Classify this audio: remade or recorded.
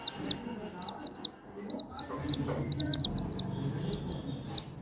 recorded